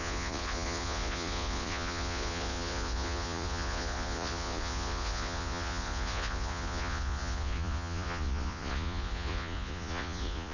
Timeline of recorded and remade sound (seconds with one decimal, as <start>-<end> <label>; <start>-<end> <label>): 0.0-10.5 remade